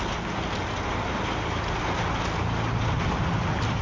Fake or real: real